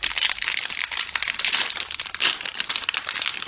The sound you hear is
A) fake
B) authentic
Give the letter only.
B